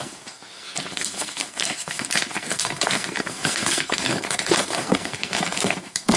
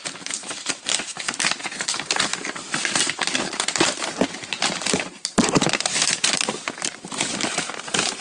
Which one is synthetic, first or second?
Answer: first